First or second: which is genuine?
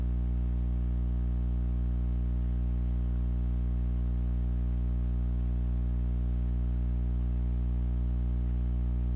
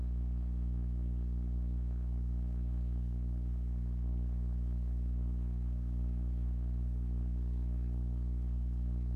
first